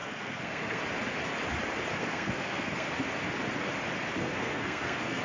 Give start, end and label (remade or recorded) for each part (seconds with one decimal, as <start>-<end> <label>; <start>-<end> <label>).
0.0-0.8 remade; 0.8-2.0 recorded; 2.0-2.9 remade; 2.9-4.2 recorded; 4.2-5.2 remade